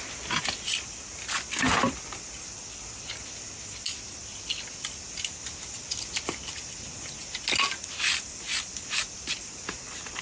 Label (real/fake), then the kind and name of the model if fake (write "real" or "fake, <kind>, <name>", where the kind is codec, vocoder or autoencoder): real